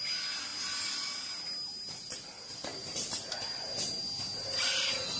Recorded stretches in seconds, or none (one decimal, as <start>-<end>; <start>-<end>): 0.0-2.7; 4.0-5.2